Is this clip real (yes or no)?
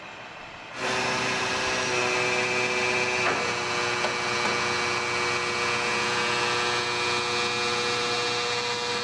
yes